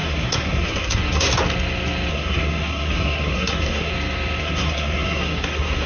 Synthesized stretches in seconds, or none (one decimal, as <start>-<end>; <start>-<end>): 0.0-1.3; 2.1-3.9; 4.4-5.9